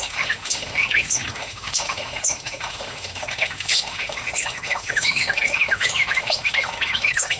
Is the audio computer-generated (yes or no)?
yes